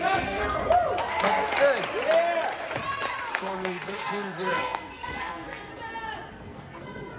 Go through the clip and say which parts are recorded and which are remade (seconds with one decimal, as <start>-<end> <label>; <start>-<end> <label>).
0.0-0.6 remade; 0.6-1.1 recorded; 1.1-1.5 remade; 1.5-3.3 recorded; 3.3-5.7 remade; 5.7-6.3 recorded; 6.3-7.2 remade